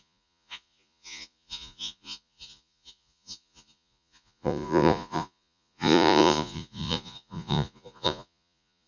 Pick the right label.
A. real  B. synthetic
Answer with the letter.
B